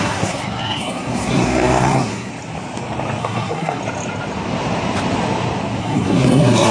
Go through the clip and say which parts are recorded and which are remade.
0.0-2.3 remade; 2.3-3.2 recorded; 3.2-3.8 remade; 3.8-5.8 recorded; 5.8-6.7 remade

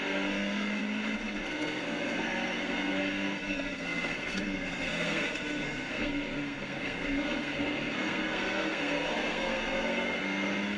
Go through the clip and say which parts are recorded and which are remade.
0.0-0.8 remade; 0.8-1.5 recorded; 1.5-10.8 remade